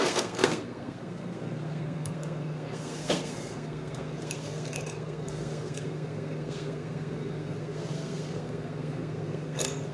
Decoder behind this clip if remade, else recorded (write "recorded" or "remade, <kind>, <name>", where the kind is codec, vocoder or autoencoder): remade, codec, SNAC